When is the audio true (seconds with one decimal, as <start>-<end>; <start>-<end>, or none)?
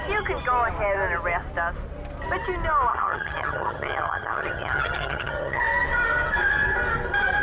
0.0-2.9; 5.6-7.4